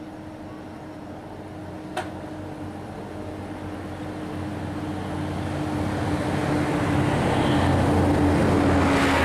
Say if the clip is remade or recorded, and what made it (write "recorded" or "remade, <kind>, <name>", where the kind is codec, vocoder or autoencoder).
recorded